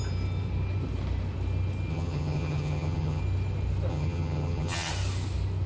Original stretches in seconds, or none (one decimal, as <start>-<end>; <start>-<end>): 0.0-1.9; 3.2-3.9; 4.9-5.7